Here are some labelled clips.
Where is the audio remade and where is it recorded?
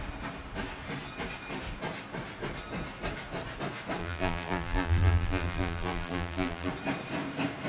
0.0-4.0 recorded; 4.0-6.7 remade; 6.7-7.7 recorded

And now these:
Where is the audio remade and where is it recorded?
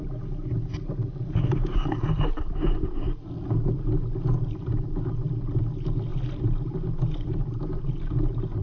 0.0-8.6 recorded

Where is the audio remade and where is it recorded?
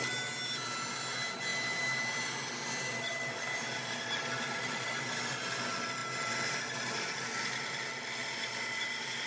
0.0-9.3 recorded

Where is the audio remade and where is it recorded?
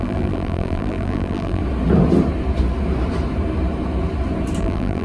0.0-1.6 remade; 1.6-4.6 recorded; 4.6-5.0 remade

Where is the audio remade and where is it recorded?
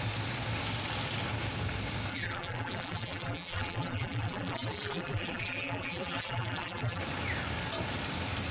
0.0-2.1 recorded; 2.1-7.0 remade; 7.0-8.5 recorded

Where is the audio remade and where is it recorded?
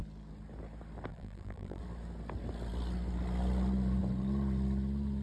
0.0-1.1 recorded; 1.1-1.8 remade; 1.8-5.2 recorded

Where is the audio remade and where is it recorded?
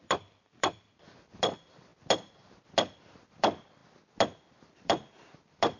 0.0-1.9 remade; 1.9-3.0 recorded; 3.0-3.8 remade; 3.8-4.6 recorded; 4.6-5.8 remade